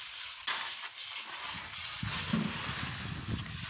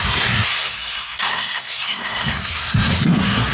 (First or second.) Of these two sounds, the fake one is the second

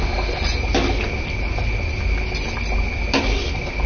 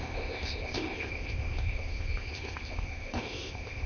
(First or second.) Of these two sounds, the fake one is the second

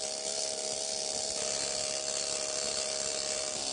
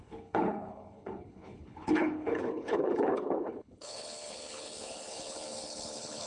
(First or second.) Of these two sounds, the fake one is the second